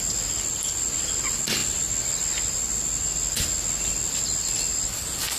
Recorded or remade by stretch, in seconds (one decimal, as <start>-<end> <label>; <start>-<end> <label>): 0.0-5.4 recorded